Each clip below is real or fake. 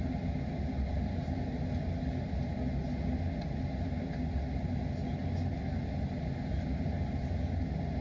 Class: real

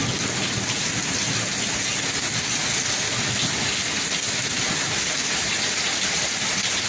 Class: real